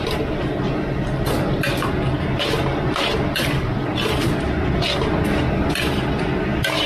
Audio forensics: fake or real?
real